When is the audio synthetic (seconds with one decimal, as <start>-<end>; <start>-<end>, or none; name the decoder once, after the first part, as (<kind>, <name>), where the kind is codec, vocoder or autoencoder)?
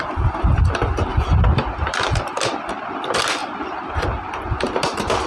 1.1-2.5 (vocoder, BigVGAN v2); 3.4-4.0